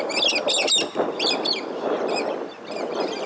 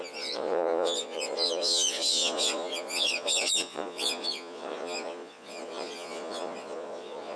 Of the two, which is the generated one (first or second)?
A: second